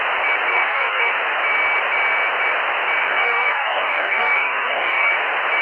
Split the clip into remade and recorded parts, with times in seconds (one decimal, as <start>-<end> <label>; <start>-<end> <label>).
0.0-0.5 recorded; 0.5-1.1 remade; 1.1-3.0 recorded; 3.0-5.1 remade; 5.1-5.6 recorded